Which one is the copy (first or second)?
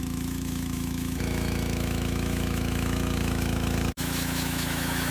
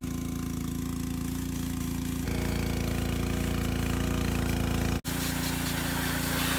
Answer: first